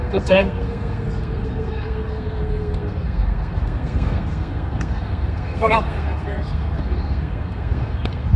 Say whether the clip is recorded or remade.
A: remade